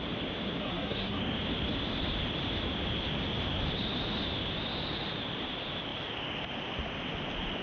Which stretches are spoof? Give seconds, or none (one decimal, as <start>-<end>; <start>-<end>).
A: 0.6-1.2